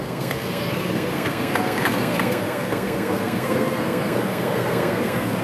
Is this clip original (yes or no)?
no